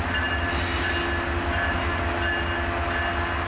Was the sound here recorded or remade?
recorded